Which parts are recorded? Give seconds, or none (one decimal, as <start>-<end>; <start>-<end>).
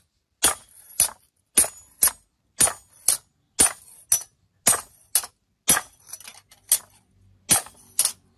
0.0-8.4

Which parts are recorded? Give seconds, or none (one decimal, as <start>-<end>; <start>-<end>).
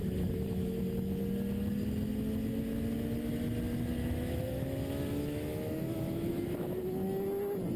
0.8-4.0; 6.9-7.8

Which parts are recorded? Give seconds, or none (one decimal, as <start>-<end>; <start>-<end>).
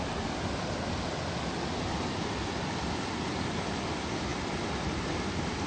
0.0-5.7